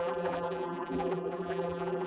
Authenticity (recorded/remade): remade